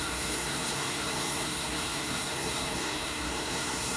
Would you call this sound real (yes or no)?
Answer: no